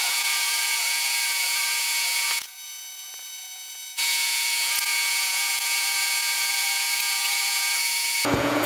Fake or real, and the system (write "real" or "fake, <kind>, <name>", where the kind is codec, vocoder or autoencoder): fake, vocoder, Vocos